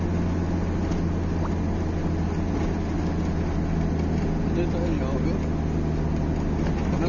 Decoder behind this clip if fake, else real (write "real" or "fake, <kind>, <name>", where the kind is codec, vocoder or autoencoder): real